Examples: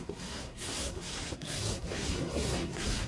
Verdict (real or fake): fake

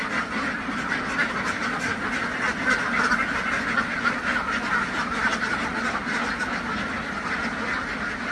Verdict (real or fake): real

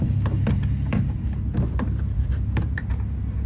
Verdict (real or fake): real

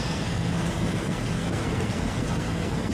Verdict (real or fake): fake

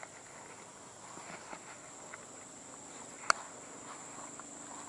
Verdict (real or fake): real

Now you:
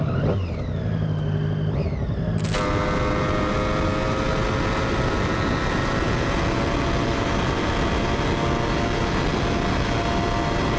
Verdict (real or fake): real